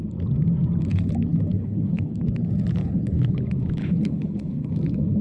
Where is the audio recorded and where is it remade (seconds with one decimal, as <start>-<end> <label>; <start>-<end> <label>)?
0.0-1.5 recorded; 1.5-2.2 remade; 2.2-2.8 recorded; 2.8-3.4 remade; 3.4-3.8 recorded; 3.8-4.7 remade; 4.7-5.2 recorded